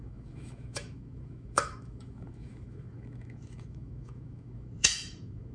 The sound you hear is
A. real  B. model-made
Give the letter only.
B